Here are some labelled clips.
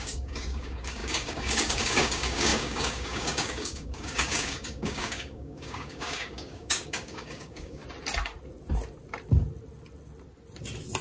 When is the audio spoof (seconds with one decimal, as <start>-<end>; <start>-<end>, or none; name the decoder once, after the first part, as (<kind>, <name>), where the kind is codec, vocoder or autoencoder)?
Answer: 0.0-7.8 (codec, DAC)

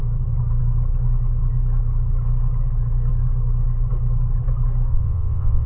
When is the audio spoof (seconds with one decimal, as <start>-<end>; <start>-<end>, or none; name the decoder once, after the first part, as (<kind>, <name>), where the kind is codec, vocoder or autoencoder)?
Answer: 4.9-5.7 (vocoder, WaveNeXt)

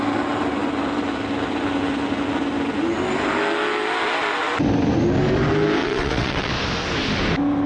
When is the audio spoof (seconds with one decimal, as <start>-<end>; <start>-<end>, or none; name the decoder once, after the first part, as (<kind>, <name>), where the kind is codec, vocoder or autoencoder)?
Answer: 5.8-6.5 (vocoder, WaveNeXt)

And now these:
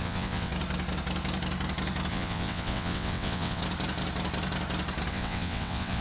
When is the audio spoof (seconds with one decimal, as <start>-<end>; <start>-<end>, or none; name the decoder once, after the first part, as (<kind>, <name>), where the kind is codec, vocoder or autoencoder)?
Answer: 0.0-0.5 (vocoder, WaveNeXt); 2.1-3.6; 5.1-6.0

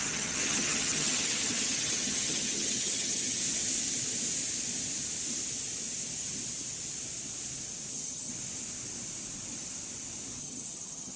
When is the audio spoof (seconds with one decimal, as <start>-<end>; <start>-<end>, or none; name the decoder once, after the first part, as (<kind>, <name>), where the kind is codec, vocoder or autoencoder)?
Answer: 0.0-3.4 (vocoder, HiFi-GAN); 7.9-8.3; 10.4-11.2

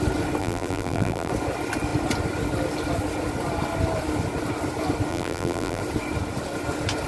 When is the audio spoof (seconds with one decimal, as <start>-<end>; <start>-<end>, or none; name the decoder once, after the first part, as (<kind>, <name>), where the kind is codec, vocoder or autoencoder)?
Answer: 0.4-1.3 (vocoder, BigVGAN v2); 5.1-5.8

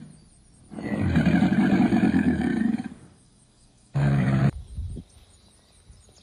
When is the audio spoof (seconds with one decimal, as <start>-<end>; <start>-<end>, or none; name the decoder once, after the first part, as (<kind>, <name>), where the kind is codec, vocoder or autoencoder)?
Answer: 1.9-4.4 (codec, DAC)

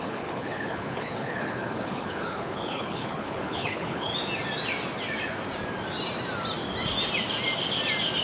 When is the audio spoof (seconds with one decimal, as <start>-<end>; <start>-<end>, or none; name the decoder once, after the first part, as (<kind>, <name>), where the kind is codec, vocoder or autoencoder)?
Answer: 0.0-4.1 (codec, HILCodec)